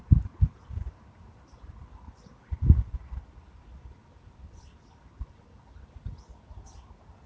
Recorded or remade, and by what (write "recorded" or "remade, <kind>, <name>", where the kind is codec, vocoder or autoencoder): remade, vocoder, BigVGAN v2